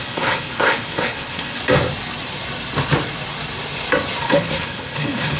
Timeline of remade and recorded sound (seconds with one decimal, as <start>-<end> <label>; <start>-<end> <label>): 0.0-1.6 remade; 1.6-4.2 recorded; 4.2-5.4 remade